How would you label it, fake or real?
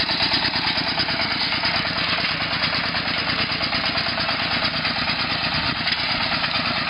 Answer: real